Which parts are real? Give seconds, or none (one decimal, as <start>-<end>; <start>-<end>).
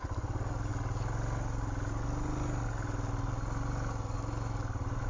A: 0.0-5.1